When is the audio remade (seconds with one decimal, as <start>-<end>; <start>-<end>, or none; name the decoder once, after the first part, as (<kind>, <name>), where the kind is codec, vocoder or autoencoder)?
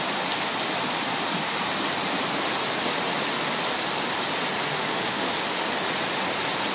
4.7-5.3 (autoencoder, DAC-VAE)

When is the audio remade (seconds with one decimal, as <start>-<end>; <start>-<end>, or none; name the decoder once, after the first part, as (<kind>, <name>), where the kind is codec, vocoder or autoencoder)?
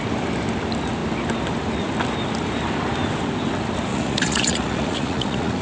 3.9-5.6 (vocoder, Vocos)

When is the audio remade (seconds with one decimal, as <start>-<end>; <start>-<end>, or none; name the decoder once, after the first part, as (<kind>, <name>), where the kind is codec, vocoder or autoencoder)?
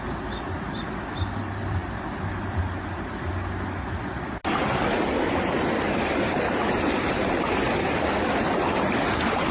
none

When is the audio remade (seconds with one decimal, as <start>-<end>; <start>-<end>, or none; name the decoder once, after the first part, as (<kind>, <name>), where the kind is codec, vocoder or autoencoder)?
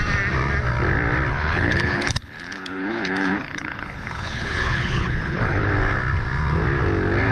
1.3-5.7 (codec, HILCodec)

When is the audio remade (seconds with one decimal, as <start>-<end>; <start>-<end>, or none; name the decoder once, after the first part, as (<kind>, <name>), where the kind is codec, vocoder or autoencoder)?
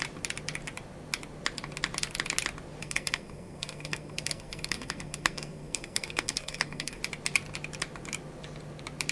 2.8-7.0 (codec, SNAC)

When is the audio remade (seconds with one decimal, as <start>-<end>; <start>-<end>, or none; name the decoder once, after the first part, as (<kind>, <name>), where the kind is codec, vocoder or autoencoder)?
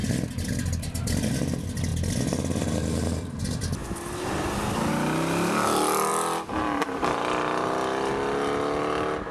6.1-8.1 (vocoder, BigVGAN v2)